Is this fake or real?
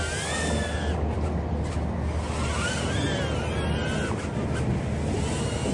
real